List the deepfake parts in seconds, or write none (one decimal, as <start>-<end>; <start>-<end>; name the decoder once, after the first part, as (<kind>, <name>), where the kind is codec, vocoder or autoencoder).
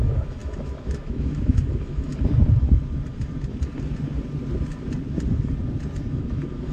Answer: 0.0-2.1 (autoencoder, DAC-VAE); 6.1-6.7